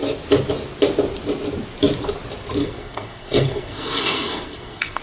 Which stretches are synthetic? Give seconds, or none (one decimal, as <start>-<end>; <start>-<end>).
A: 2.6-5.0